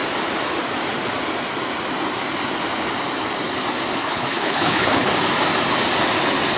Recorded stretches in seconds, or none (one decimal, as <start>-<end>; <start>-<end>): 0.0-4.0; 5.1-6.6